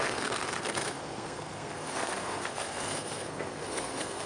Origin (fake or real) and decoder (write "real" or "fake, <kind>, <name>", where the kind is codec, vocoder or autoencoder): fake, codec, SNAC